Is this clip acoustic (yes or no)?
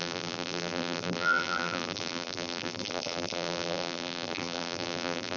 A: no